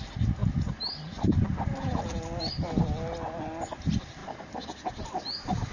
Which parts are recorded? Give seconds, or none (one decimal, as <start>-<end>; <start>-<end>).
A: 0.0-5.7